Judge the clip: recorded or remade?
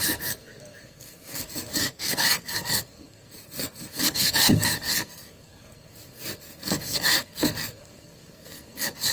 remade